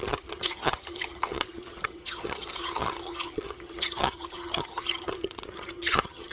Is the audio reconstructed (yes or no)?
yes